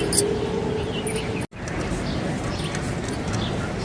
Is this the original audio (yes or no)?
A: yes